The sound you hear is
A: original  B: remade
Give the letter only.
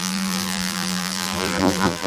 B